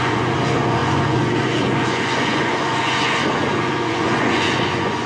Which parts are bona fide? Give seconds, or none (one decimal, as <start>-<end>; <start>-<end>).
none